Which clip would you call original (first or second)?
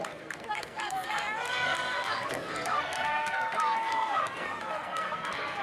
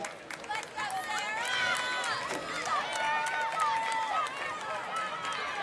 second